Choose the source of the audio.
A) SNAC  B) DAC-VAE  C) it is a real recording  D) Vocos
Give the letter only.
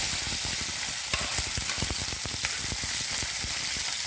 C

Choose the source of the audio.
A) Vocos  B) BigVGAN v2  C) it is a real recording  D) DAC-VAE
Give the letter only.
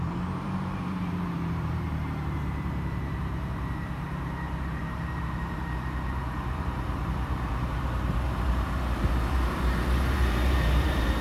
B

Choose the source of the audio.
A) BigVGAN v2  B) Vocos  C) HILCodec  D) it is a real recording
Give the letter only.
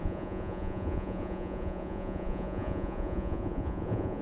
B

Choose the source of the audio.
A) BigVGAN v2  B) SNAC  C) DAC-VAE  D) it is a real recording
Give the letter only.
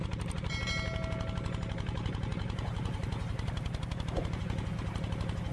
D